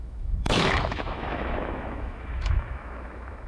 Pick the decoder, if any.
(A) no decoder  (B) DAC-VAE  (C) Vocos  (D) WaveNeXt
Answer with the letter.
B